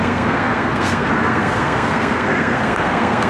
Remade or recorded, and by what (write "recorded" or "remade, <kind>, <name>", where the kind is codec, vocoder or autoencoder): remade, codec, SNAC